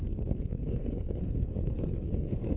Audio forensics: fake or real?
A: fake